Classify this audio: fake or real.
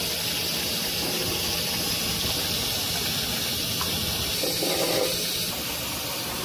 real